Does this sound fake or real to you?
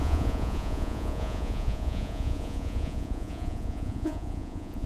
fake